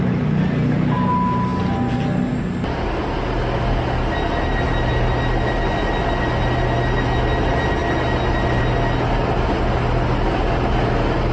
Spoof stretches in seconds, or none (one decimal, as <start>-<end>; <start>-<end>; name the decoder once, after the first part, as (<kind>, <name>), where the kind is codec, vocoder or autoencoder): none